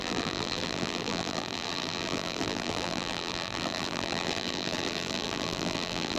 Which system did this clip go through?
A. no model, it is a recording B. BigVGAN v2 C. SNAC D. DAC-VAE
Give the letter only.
B